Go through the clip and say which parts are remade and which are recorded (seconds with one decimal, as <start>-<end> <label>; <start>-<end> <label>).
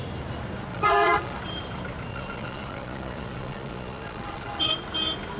0.0-0.7 recorded; 0.7-1.4 remade; 1.4-2.1 recorded; 2.1-4.7 remade; 4.7-5.4 recorded